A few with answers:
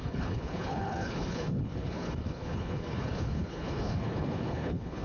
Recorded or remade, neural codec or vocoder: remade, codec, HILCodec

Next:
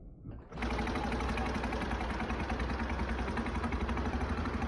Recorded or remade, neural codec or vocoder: recorded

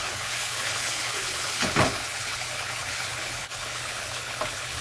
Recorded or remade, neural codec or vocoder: remade, codec, HILCodec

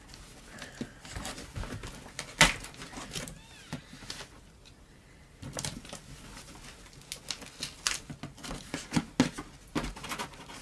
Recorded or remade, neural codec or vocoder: recorded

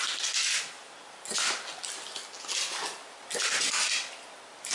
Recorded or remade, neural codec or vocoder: recorded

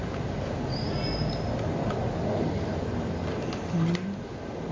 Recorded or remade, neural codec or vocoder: recorded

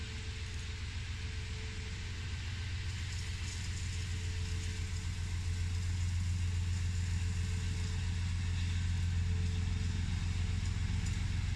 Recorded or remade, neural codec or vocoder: recorded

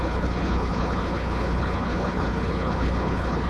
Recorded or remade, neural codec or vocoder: remade, codec, HILCodec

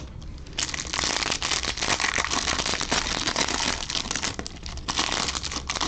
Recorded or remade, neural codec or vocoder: recorded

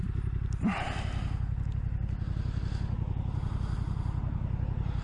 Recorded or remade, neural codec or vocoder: recorded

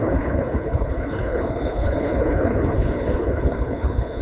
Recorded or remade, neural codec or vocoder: remade, codec, HILCodec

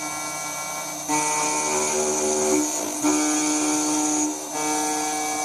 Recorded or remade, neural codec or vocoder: recorded